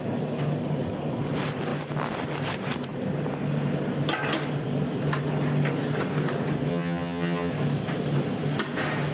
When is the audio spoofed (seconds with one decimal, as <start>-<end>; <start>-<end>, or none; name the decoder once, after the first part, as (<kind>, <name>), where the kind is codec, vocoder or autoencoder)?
6.7-7.5 (vocoder, HiFi-GAN)